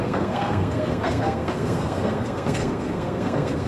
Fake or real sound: fake